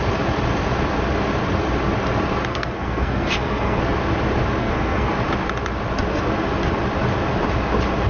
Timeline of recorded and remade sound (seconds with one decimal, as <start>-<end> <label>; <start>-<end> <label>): 0.0-2.5 recorded; 2.5-3.8 remade; 3.8-4.6 recorded; 4.6-5.1 remade; 5.1-8.1 recorded